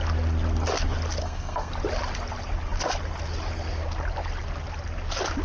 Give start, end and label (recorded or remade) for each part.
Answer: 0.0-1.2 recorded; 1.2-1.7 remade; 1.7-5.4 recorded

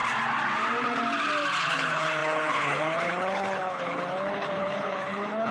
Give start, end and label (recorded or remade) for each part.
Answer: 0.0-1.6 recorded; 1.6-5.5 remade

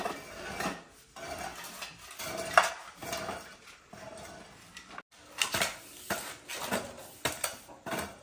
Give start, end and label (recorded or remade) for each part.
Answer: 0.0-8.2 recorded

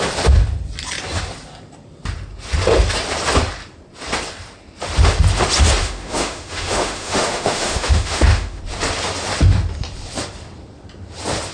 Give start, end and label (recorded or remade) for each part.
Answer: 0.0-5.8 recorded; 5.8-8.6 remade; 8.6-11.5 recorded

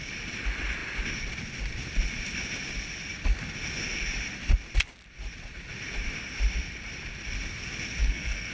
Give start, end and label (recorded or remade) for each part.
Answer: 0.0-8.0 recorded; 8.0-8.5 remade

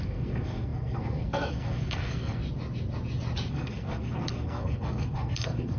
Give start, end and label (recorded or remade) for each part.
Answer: 0.0-2.4 remade; 2.4-3.5 recorded; 3.5-5.8 remade

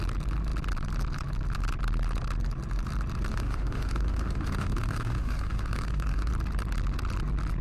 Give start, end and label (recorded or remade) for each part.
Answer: 0.0-3.3 recorded; 3.3-6.3 remade; 6.3-7.6 recorded

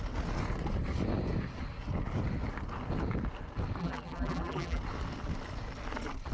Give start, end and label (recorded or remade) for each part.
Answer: 0.0-3.8 recorded; 3.8-4.8 remade; 4.8-6.3 recorded